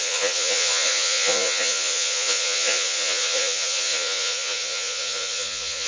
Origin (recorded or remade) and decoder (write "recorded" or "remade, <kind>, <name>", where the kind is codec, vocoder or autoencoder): remade, vocoder, Vocos